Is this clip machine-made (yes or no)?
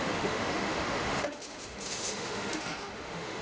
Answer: yes